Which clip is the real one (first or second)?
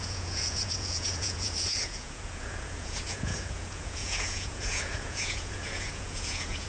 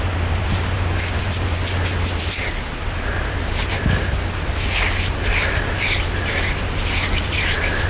second